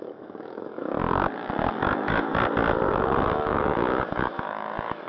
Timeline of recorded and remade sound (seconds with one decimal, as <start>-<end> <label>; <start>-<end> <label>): 0.0-1.0 remade; 1.0-1.7 recorded; 1.7-2.3 remade; 2.3-2.9 recorded; 2.9-5.1 remade

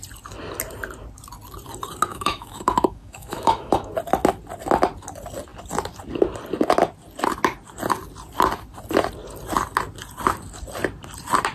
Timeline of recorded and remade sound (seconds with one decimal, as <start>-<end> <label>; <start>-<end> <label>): 0.0-2.1 recorded; 2.1-3.9 remade; 3.9-11.5 recorded

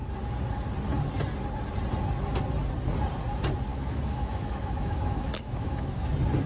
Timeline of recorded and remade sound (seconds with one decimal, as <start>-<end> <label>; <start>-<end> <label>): 0.0-3.7 recorded; 3.7-6.1 remade; 6.1-6.5 recorded

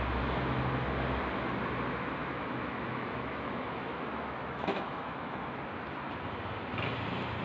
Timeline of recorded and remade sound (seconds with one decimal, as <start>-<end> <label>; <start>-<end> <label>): 0.0-2.2 recorded; 2.2-5.6 remade; 5.6-7.4 recorded

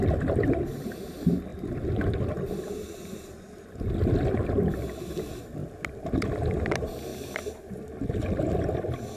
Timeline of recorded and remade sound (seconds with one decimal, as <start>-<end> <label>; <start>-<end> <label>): 0.0-9.2 recorded

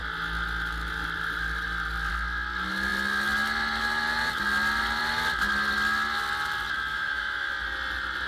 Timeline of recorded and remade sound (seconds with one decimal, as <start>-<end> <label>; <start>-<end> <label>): 0.0-6.9 recorded; 6.9-7.5 remade; 7.5-8.3 recorded

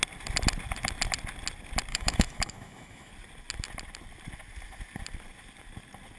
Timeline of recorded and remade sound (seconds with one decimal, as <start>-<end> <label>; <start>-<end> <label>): 0.0-1.9 recorded; 1.9-3.1 remade; 3.1-6.2 recorded

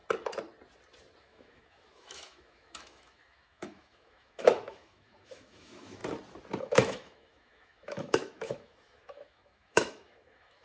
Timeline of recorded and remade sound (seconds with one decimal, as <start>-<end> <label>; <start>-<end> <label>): 0.0-1.2 recorded; 1.2-6.0 remade; 6.0-6.6 recorded; 6.6-10.6 remade